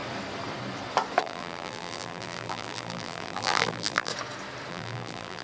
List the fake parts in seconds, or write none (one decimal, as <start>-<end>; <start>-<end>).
1.2-4.1; 4.7-5.4